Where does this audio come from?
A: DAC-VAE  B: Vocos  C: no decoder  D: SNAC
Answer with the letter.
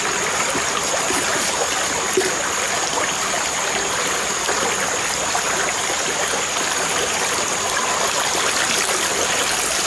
C